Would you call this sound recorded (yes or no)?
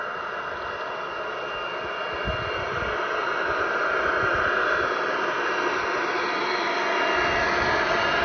yes